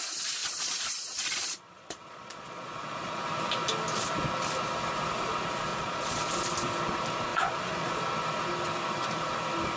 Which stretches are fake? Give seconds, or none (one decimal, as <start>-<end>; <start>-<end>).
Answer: 0.4-3.2; 5.7-6.2; 7.3-8.0